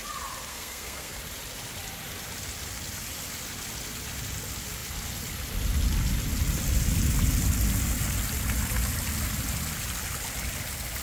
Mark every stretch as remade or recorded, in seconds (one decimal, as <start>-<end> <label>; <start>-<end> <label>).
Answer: 0.0-0.5 recorded; 0.5-1.2 remade; 1.2-11.0 recorded